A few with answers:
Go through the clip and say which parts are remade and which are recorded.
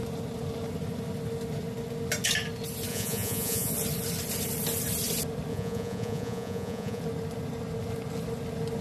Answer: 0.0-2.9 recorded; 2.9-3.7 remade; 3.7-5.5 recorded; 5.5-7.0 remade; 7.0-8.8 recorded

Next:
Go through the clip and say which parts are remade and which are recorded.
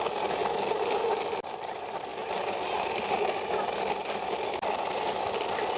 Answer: 0.0-0.4 remade; 0.4-1.1 recorded; 1.1-5.8 remade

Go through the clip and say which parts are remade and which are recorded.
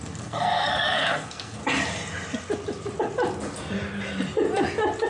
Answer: 0.0-1.6 remade; 1.6-5.1 recorded